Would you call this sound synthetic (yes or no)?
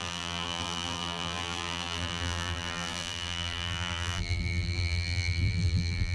yes